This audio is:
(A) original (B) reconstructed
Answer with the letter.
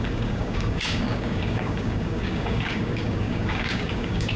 B